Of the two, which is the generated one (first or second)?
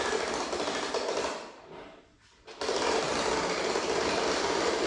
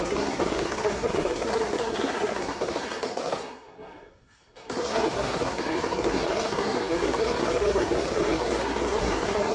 second